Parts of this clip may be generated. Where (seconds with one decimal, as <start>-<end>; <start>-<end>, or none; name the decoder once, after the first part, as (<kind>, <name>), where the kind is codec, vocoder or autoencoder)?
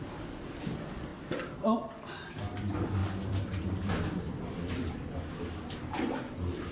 1.1-2.3 (vocoder, BigVGAN v2); 3.0-4.7